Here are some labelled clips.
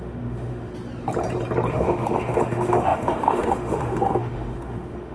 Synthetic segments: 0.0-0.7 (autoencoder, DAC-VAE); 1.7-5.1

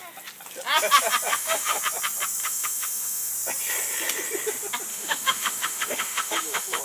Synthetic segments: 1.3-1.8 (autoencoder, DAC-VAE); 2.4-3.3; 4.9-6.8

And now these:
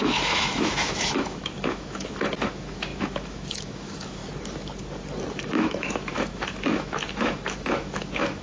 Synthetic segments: 0.0-4.2 (autoencoder, DAC-VAE); 5.3-8.4

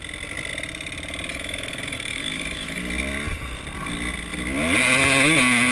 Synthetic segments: 1.3-2.8 (autoencoder, DAC-VAE)